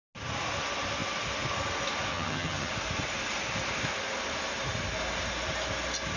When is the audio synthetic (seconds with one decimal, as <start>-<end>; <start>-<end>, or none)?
2.1-2.7